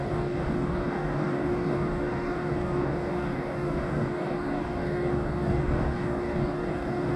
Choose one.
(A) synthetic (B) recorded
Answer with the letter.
A